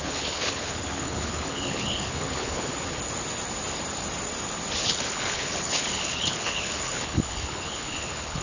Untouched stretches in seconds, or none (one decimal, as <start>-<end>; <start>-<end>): 2.7-4.8